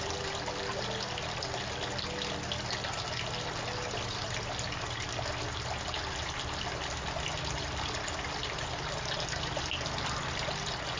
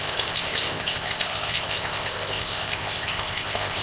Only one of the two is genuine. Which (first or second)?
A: first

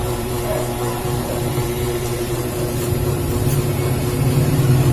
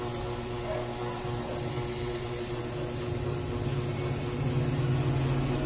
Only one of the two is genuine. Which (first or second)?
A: second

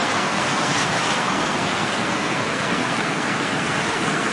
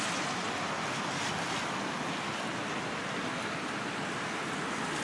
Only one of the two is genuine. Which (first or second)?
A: second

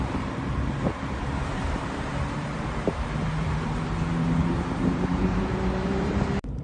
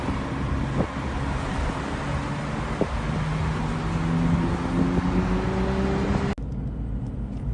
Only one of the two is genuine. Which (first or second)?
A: second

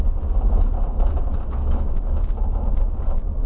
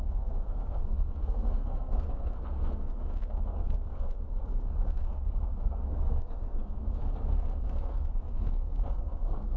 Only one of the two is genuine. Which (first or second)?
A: first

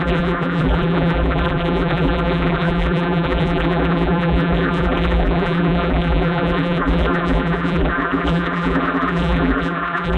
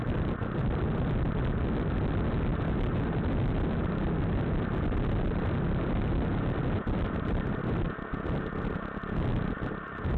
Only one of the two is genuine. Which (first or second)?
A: second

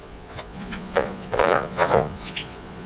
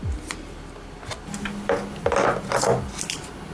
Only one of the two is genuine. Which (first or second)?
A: second